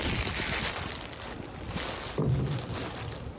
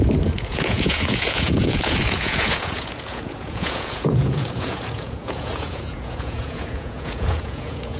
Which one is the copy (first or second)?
second